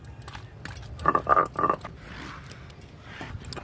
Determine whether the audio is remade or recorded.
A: recorded